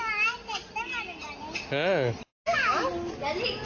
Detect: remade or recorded recorded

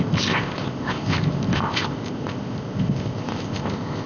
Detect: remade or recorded remade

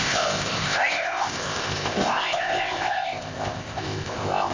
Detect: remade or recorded remade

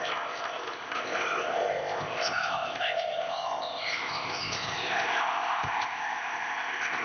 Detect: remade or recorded remade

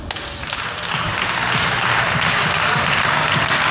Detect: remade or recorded recorded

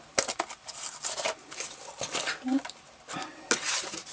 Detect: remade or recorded recorded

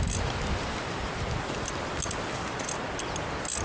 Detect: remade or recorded recorded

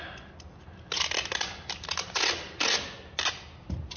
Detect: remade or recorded recorded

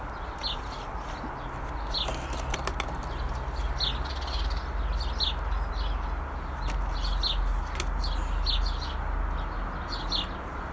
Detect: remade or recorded recorded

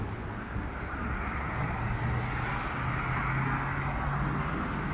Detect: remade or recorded recorded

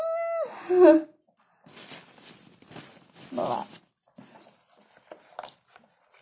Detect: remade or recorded recorded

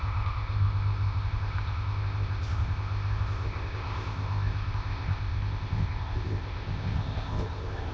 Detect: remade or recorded remade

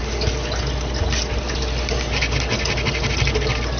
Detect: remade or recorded recorded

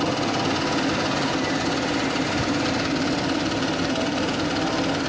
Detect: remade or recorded recorded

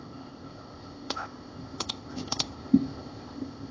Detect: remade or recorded remade